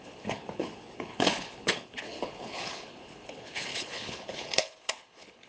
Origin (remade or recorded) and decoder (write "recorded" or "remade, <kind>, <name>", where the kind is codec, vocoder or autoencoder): remade, codec, HILCodec